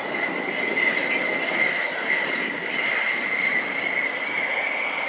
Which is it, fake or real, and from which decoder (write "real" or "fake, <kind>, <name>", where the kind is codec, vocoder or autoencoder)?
real